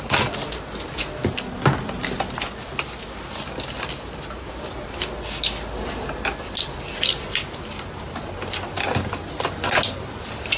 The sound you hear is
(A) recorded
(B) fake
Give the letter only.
A